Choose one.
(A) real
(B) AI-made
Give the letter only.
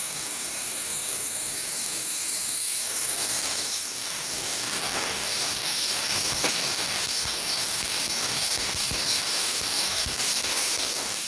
B